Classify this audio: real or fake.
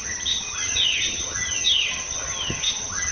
fake